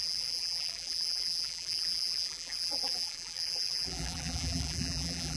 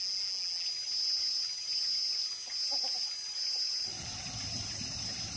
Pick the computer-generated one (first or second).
first